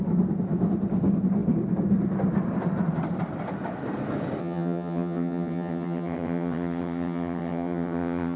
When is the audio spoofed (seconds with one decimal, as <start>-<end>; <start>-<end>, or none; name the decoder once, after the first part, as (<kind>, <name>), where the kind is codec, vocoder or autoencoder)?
4.4-8.4 (vocoder, HiFi-GAN)